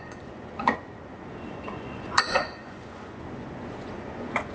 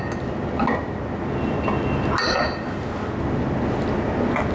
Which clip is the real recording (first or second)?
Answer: second